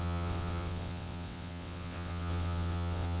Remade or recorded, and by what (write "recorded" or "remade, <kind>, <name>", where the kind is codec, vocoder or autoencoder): remade, vocoder, WaveNeXt